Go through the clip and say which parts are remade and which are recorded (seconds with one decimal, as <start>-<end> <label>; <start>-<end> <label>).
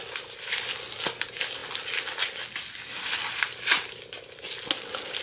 0.0-5.2 recorded